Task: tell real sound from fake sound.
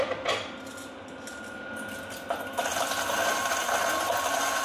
real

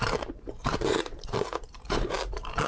fake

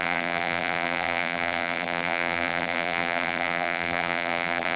fake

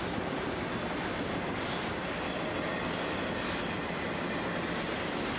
real